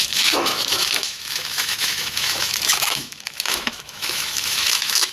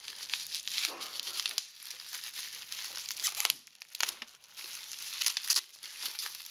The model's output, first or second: first